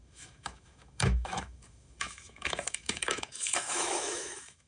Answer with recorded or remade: remade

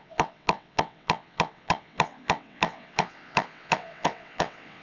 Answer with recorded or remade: remade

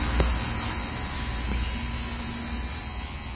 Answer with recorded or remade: recorded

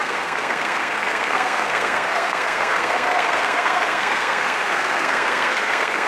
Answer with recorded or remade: remade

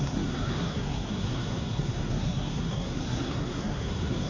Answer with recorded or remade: remade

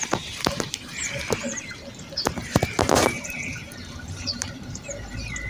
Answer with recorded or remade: remade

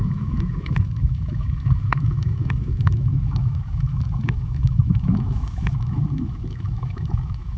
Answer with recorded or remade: remade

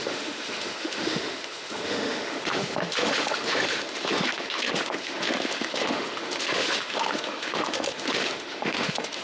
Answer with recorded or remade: remade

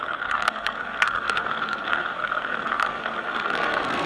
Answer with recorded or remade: remade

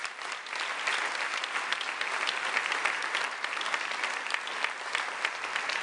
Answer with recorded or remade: recorded